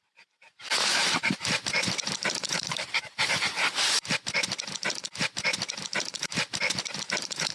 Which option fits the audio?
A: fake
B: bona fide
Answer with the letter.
A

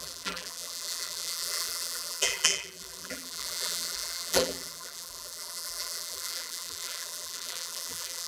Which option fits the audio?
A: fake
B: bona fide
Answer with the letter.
A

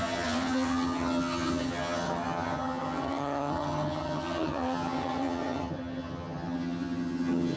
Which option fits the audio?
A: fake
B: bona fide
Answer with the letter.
A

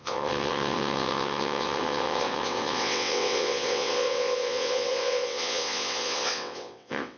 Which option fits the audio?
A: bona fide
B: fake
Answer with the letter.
B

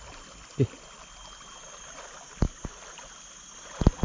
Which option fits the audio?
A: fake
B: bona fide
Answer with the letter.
B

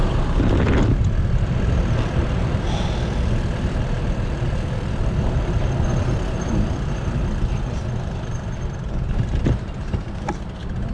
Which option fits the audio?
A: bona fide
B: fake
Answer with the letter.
A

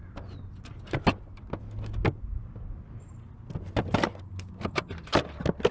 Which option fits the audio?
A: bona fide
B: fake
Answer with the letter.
A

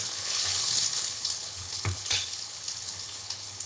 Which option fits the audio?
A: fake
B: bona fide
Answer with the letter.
A